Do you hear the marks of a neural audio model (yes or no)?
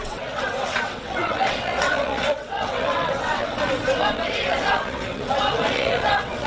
yes